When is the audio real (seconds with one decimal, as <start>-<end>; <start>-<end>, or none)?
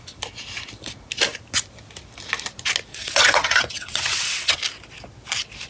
0.0-2.9; 4.6-5.7